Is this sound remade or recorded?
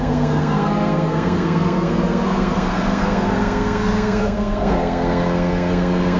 remade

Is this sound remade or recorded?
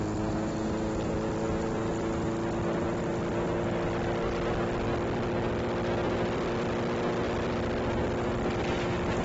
recorded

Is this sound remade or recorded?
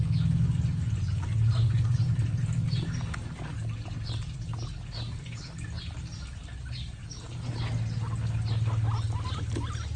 recorded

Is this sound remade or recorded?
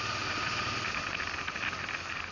recorded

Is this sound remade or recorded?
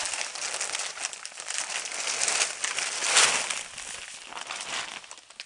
recorded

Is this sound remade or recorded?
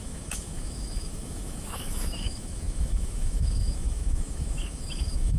remade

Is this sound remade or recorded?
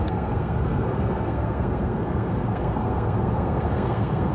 remade